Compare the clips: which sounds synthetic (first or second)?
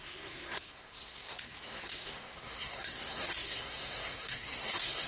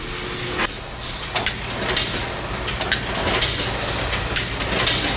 first